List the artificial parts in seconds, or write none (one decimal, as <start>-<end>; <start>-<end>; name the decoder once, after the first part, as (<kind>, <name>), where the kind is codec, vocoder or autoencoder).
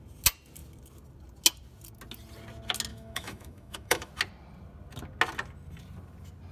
2.9-4.1 (autoencoder, DAC-VAE)